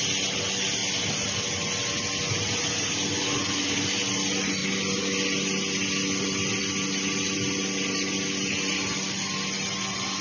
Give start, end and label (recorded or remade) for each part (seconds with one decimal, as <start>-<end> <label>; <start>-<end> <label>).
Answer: 0.0-10.2 recorded